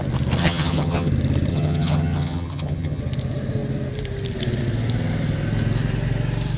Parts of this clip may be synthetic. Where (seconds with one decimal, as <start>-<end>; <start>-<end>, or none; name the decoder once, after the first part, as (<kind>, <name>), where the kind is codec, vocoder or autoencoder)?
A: 0.4-1.1 (vocoder, HiFi-GAN); 1.5-3.0